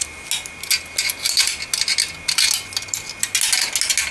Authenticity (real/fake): real